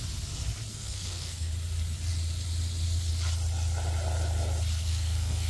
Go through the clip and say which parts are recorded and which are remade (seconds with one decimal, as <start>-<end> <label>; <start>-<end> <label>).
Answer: 0.0-0.7 recorded; 0.7-1.5 remade; 1.5-4.8 recorded; 4.8-5.5 remade